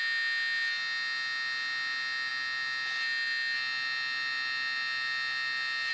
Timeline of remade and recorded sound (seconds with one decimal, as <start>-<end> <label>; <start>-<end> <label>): 0.0-5.9 recorded